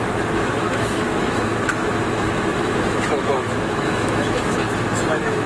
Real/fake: fake